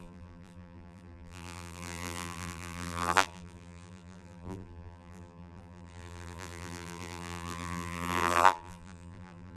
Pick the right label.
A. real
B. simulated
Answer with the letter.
B